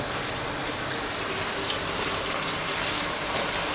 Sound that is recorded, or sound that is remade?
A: recorded